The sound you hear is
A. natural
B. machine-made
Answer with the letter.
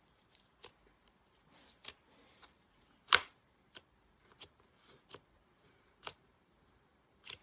B